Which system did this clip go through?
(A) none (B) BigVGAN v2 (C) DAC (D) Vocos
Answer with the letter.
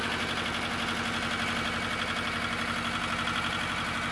A